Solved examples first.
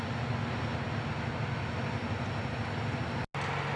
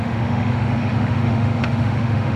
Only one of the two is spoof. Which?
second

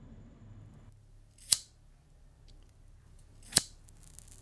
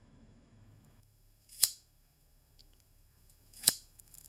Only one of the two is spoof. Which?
second